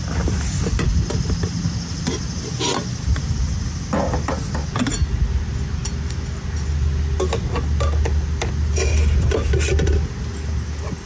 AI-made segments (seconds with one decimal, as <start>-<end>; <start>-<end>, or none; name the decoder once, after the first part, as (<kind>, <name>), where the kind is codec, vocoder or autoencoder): none